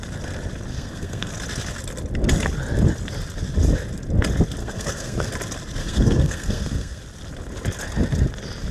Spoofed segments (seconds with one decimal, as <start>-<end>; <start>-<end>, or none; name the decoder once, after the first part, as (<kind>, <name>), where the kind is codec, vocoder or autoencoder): 0.7-1.3 (codec, SNAC); 4.6-5.3; 5.8-7.0